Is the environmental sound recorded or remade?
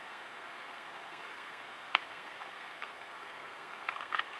remade